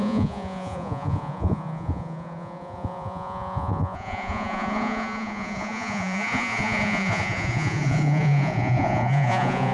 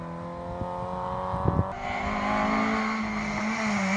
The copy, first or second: first